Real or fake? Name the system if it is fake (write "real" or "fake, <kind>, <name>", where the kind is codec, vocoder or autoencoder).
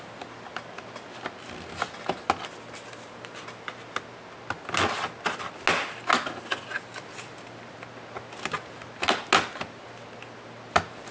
real